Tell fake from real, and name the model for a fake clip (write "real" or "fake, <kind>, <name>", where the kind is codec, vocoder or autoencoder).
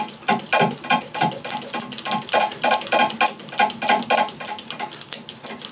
real